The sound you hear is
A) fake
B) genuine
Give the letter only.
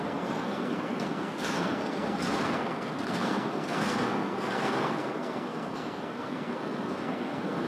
A